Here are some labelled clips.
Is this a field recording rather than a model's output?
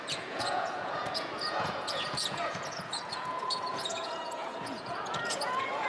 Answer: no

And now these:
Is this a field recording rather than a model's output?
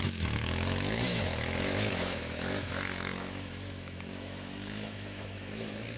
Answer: no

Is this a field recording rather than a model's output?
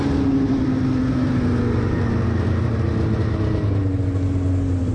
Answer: yes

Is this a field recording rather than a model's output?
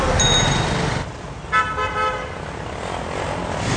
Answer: yes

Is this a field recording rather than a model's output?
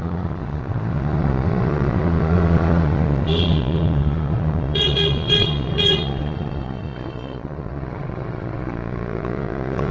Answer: no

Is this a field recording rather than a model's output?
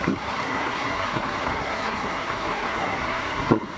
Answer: no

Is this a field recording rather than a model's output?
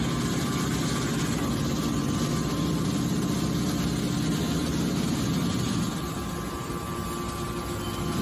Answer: yes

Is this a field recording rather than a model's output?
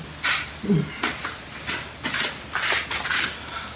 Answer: yes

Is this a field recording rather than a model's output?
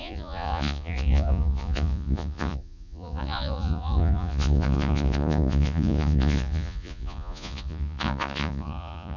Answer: no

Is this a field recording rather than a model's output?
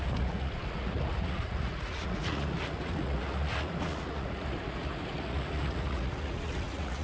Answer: no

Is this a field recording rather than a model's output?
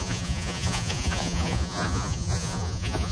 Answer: no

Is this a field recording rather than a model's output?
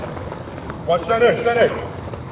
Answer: no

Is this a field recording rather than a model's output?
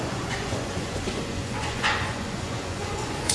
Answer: no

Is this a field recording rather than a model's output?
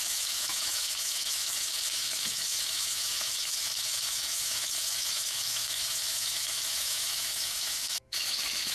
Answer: no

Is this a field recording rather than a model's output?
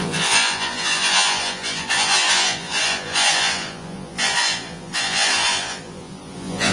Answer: no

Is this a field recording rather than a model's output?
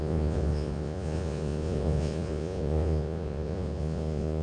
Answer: no